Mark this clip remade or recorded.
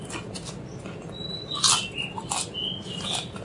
recorded